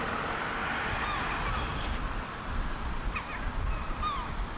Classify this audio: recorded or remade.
recorded